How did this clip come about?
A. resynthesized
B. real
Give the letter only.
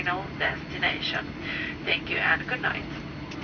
B